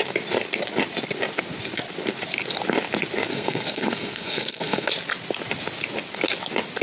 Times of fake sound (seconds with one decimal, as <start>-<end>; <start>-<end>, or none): 3.3-4.9